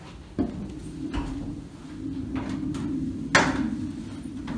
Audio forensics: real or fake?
real